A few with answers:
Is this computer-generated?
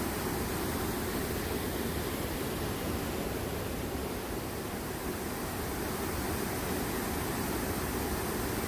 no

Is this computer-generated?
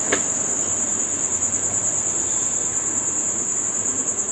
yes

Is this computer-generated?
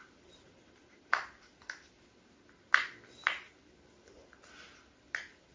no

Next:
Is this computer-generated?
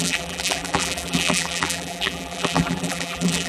yes